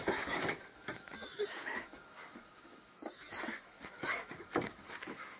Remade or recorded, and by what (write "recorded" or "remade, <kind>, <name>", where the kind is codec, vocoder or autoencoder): remade, autoencoder, DAC-VAE